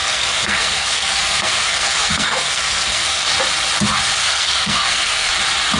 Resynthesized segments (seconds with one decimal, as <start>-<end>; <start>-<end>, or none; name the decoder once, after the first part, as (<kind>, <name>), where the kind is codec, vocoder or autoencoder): 0.0-3.2 (codec, SNAC); 4.2-5.3